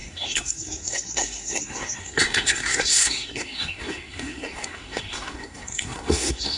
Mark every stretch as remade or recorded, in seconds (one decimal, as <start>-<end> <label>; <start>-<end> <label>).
0.0-6.6 remade